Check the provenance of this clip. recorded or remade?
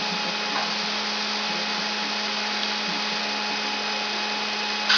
recorded